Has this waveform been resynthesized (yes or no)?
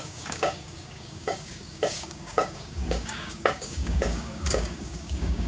yes